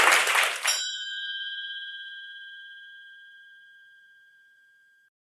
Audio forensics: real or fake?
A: fake